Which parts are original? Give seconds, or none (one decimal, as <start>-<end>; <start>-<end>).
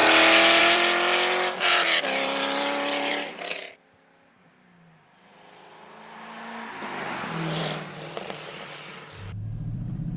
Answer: 0.0-0.6; 3.6-7.6